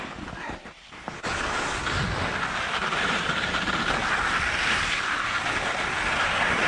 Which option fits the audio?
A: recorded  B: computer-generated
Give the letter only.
A